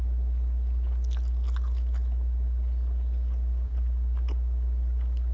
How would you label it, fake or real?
real